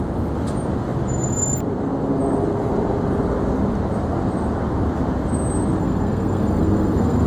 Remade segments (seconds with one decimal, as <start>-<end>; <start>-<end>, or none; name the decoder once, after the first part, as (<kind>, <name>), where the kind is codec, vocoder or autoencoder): 5.8-7.3 (codec, SNAC)